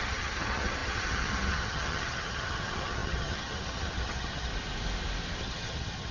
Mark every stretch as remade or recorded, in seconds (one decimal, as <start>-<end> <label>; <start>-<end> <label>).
0.0-4.5 remade; 4.5-5.4 recorded; 5.4-6.1 remade